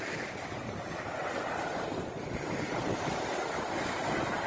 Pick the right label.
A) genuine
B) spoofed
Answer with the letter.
A